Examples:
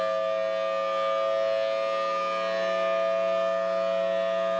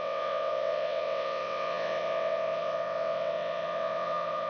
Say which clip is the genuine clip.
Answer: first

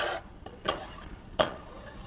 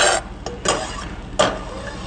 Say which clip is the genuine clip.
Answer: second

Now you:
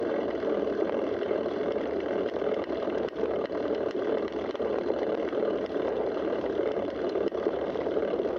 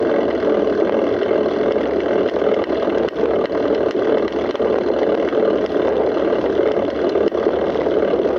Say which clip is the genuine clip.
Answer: second